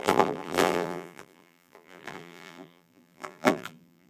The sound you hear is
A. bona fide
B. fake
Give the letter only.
B